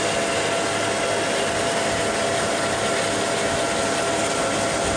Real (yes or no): yes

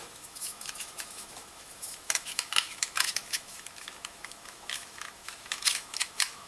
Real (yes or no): no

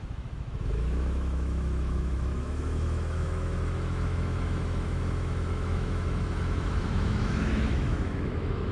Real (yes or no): no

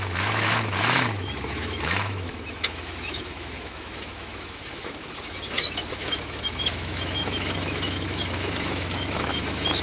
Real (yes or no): no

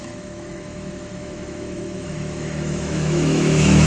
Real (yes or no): no